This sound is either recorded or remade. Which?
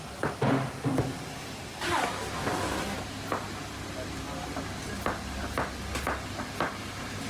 recorded